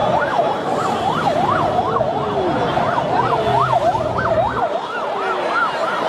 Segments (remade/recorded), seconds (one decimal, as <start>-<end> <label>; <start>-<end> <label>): 0.0-2.0 remade; 2.0-6.1 recorded